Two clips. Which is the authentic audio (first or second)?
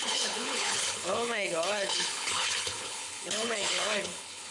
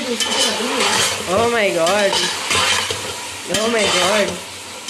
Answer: second